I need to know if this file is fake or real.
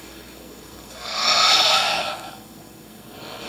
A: fake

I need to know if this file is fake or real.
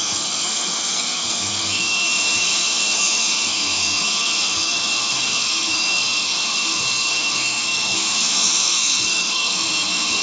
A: fake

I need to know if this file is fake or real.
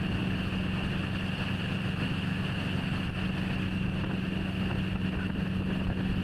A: real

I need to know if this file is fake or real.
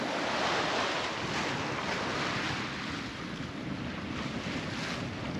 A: real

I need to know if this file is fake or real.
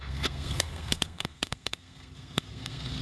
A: fake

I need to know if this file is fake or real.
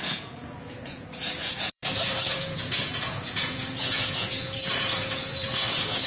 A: fake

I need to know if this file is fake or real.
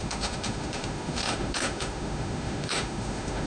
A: fake